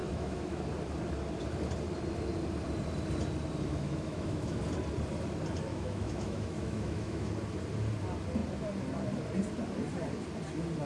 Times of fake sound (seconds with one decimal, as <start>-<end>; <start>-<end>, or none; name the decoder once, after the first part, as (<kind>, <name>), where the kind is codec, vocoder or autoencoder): 0.0-0.6 (autoencoder, DAC-VAE); 3.7-4.6; 5.7-7.3